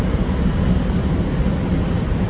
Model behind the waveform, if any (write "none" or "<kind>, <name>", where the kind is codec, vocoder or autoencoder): none